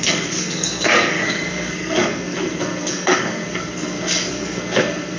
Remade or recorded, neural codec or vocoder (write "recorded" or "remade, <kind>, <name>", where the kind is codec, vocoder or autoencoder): remade, codec, SNAC